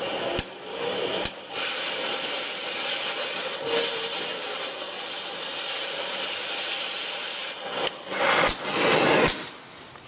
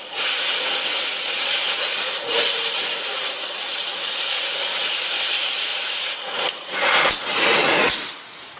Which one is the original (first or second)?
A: first